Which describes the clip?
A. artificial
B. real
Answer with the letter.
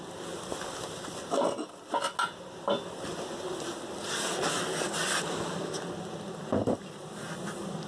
B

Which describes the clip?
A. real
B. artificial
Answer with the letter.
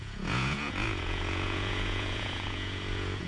B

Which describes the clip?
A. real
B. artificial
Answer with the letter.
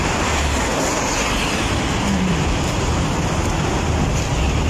A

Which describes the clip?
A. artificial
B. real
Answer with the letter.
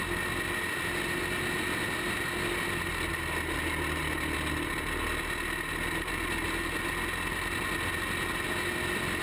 B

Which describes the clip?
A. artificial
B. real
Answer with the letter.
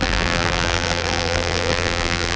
A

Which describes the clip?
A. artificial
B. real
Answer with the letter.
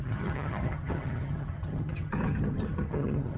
A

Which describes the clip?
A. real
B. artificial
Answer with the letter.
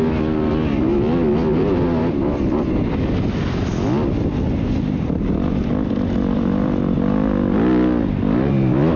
A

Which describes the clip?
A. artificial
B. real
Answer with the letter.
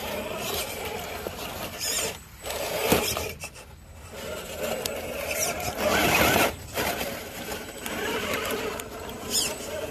A